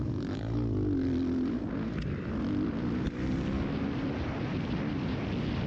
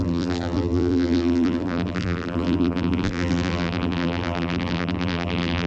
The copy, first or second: second